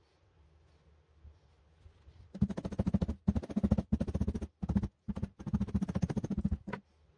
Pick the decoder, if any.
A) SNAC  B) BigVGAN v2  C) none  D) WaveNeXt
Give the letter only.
C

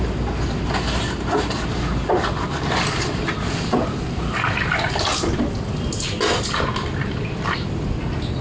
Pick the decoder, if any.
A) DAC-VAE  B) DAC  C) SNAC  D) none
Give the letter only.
D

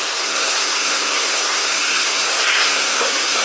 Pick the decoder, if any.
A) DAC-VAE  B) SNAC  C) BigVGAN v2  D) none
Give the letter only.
B